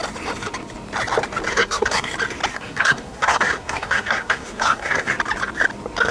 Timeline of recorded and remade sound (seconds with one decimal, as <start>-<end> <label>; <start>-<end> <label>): 0.0-1.5 recorded; 1.5-2.1 remade; 2.1-2.5 recorded; 2.5-5.1 remade; 5.1-6.1 recorded